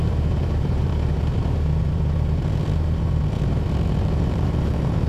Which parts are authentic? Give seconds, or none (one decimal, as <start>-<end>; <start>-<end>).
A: 0.9-4.0